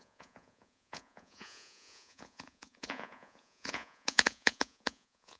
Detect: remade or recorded remade